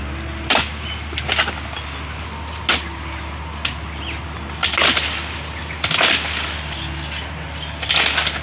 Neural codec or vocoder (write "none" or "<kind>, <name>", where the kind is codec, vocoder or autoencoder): none